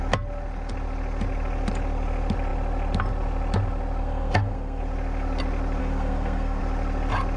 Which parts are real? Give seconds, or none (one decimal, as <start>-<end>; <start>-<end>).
0.0-4.0; 4.8-5.8; 6.6-7.4

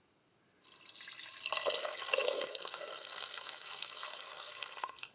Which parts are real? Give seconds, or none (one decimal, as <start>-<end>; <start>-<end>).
0.0-1.8

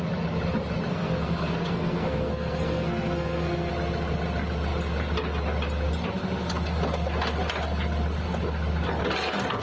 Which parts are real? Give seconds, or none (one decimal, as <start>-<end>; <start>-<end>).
0.0-0.9; 3.7-9.6